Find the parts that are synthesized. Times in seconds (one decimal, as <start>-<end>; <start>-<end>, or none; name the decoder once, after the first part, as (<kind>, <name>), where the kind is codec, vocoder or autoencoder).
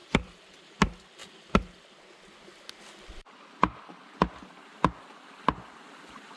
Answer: 0.0-0.7 (vocoder, BigVGAN v2)